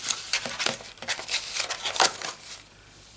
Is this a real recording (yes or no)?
no